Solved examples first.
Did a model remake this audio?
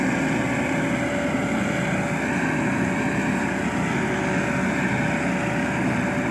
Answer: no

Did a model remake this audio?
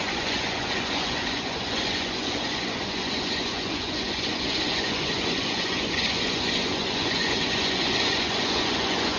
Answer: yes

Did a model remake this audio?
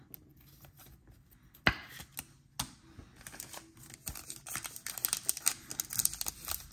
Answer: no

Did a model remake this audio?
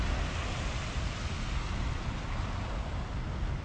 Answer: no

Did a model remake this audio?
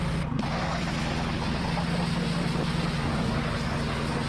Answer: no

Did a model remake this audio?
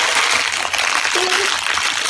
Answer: no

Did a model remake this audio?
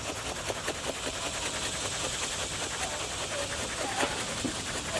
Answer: no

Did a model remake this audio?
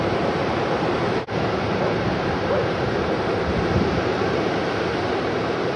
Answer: yes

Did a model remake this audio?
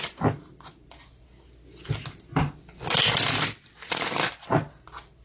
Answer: no